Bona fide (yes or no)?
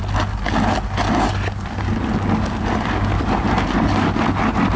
yes